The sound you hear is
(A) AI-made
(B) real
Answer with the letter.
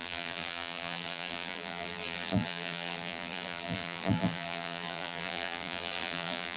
A